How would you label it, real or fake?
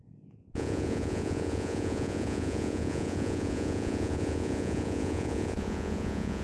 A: fake